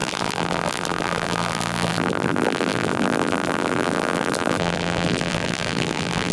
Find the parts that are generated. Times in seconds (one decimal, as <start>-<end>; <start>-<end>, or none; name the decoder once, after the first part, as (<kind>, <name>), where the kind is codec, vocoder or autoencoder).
0.0-6.3 (vocoder, BigVGAN v2)